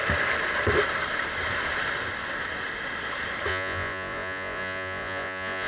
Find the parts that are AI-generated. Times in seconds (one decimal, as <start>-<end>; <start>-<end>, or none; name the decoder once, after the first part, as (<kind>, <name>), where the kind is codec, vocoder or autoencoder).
3.5-5.7 (vocoder, Vocos)